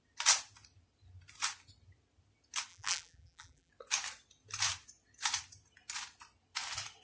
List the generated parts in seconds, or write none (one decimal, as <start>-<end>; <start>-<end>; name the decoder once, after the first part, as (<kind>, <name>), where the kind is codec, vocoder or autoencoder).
2.7-3.7 (vocoder, BigVGAN v2)